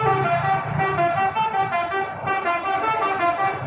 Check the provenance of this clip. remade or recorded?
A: recorded